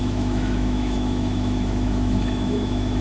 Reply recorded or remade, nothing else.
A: remade